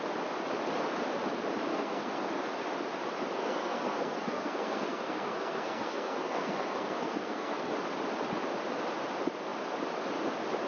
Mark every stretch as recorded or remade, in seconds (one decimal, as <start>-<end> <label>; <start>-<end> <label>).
0.0-1.7 recorded; 1.7-2.3 remade; 2.3-3.4 recorded; 3.4-7.7 remade; 7.7-10.7 recorded